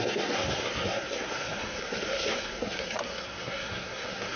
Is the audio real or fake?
fake